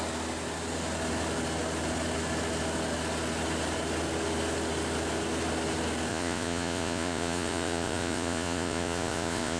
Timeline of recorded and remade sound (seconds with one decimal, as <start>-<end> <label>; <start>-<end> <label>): 0.0-6.1 recorded; 6.1-9.6 remade